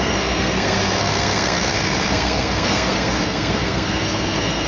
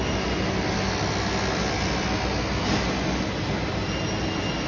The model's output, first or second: first